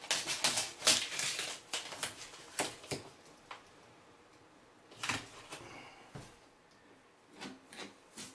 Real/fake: real